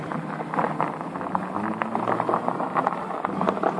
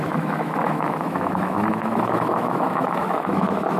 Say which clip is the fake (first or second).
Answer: second